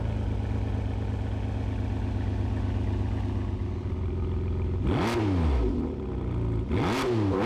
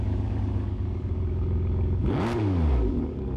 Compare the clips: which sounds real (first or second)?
first